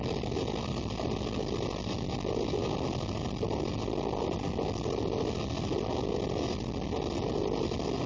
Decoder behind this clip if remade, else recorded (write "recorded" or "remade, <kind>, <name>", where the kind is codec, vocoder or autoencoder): recorded